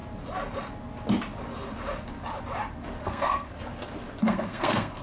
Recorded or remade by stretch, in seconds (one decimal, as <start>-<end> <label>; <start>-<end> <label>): 0.0-3.0 recorded; 3.0-3.5 remade; 3.5-4.2 recorded; 4.2-5.0 remade